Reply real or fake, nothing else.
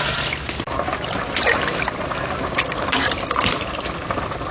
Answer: real